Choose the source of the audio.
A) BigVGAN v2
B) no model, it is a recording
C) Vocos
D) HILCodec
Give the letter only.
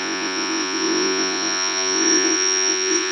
C